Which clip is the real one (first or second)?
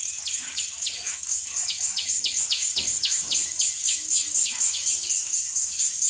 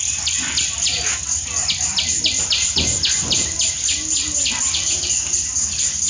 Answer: second